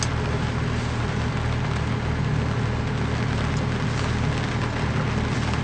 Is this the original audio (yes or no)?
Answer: yes